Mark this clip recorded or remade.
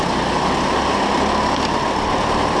recorded